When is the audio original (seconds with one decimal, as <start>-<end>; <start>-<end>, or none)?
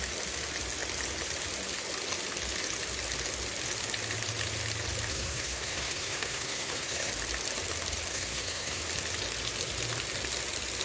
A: 0.0-5.1; 7.1-8.1; 8.8-10.8